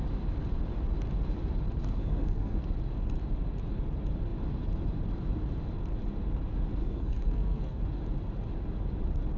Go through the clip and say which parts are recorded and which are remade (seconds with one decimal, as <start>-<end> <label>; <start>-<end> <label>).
0.0-1.8 recorded; 1.8-2.6 remade; 2.6-6.8 recorded; 6.8-7.8 remade; 7.8-9.4 recorded